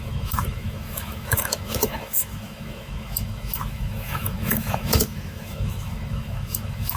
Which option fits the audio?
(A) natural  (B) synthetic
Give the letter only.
B